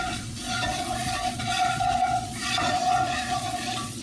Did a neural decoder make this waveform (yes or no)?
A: yes